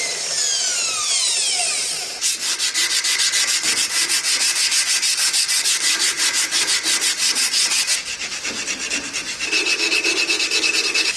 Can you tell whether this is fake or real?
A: real